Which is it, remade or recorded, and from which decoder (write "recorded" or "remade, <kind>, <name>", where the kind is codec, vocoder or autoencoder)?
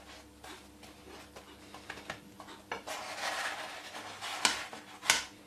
recorded